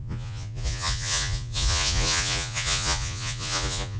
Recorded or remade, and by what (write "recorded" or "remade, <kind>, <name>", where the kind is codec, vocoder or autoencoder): remade, vocoder, Vocos